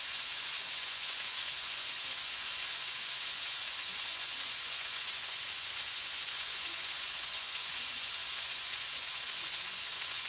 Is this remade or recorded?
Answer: remade